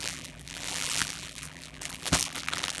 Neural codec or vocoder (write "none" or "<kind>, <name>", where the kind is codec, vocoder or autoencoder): vocoder, BigVGAN v2